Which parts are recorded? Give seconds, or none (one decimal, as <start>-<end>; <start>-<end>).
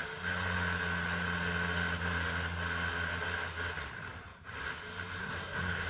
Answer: 0.0-5.2